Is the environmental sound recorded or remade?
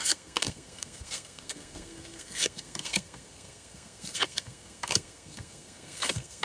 remade